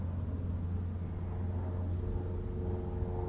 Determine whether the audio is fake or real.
real